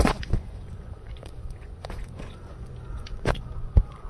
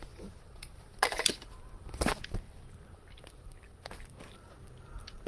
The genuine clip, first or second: second